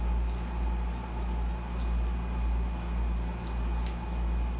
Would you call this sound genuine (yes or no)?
yes